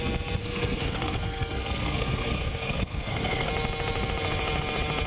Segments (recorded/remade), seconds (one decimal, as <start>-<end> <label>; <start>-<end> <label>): 0.0-0.4 recorded; 0.4-3.5 remade; 3.5-5.1 recorded